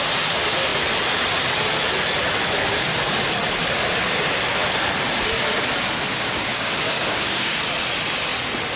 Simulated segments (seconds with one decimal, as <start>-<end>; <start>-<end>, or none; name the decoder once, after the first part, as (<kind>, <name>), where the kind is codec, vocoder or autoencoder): 6.1-7.6 (codec, DAC)